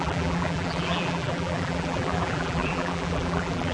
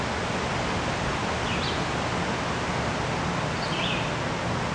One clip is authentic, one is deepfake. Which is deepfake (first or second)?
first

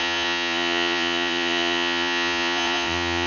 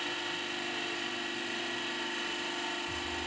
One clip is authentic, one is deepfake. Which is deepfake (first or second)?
first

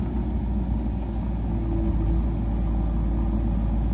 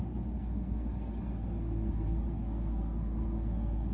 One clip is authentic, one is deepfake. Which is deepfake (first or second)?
second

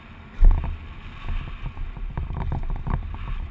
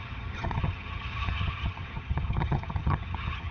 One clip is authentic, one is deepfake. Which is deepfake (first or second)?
second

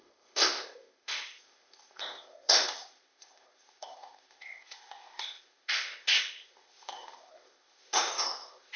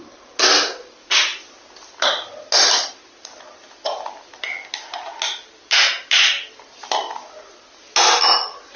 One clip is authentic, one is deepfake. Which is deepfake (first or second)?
first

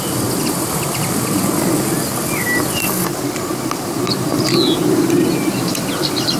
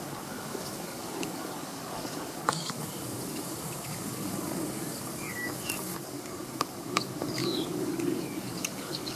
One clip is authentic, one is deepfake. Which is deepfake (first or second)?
second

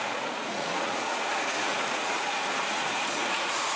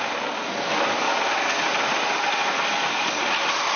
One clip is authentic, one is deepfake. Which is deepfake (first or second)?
first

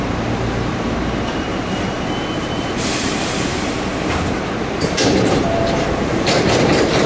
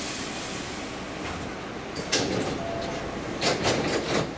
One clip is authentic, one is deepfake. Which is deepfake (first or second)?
first